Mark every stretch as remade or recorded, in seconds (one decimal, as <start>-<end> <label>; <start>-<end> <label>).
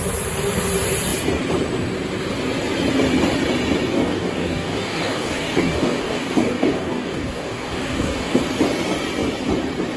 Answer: 0.0-3.9 recorded; 3.9-8.4 remade; 8.4-10.0 recorded